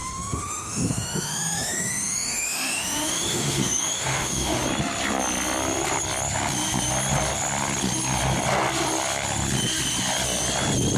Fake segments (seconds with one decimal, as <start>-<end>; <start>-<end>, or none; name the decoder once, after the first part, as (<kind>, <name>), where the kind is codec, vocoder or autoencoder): 0.0-4.6 (autoencoder, DAC-VAE)